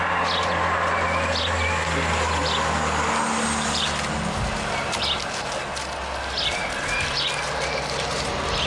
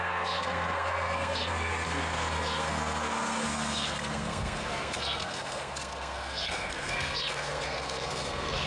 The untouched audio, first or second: first